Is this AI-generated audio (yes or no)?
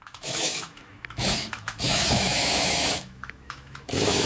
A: yes